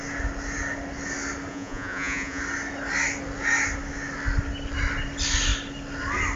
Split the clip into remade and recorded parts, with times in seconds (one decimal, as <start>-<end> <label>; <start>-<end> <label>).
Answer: 0.0-1.5 recorded; 1.5-2.4 remade; 2.4-6.4 recorded

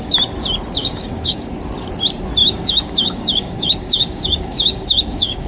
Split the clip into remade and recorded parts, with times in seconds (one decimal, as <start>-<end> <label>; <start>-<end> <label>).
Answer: 0.0-0.8 recorded; 0.8-1.4 remade; 1.4-2.4 recorded; 2.4-5.5 remade

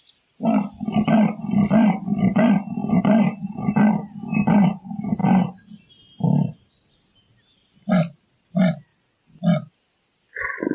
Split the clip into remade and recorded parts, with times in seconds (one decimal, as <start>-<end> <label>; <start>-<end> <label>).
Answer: 0.0-10.7 recorded

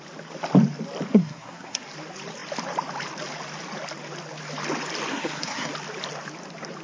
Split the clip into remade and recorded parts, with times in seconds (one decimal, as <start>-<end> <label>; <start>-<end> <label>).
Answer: 0.0-1.1 recorded; 1.1-1.8 remade; 1.8-5.1 recorded; 5.1-5.7 remade; 5.7-6.8 recorded

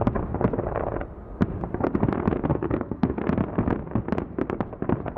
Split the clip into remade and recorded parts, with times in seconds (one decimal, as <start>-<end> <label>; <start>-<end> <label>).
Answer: 0.0-2.5 recorded; 2.5-3.2 remade; 3.2-5.2 recorded

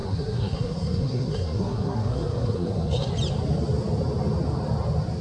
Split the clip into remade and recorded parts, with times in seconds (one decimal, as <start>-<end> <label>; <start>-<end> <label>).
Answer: 0.0-3.1 remade; 3.1-5.2 recorded

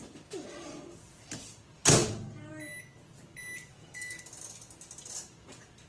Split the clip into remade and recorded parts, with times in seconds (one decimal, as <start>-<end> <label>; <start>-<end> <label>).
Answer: 0.0-3.7 recorded; 3.7-4.2 remade; 4.2-5.9 recorded